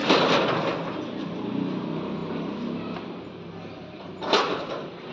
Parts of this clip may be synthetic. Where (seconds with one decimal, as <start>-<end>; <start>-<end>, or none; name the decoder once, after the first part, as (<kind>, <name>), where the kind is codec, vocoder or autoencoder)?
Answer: none